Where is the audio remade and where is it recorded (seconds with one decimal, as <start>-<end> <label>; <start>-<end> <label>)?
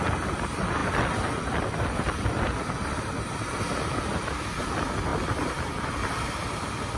0.0-0.8 recorded; 0.8-2.3 remade; 2.3-7.0 recorded